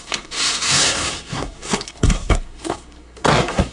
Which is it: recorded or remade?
remade